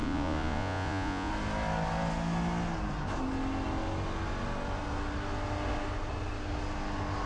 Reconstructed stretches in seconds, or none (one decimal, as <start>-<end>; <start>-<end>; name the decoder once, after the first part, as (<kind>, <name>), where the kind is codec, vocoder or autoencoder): 0.0-1.3 (vocoder, Vocos)